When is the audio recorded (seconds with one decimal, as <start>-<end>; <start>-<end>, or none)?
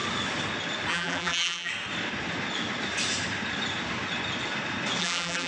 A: 0.0-0.9; 1.7-5.0